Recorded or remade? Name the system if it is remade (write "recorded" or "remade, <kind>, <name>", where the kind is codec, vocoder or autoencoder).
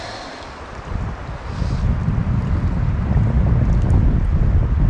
recorded